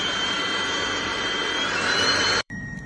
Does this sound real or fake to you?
fake